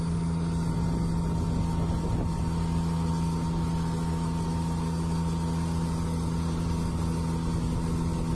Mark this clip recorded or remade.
recorded